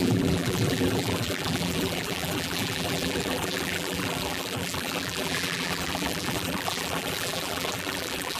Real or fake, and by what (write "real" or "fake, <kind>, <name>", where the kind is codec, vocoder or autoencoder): fake, vocoder, BigVGAN v2